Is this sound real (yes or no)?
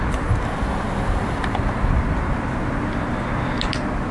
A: yes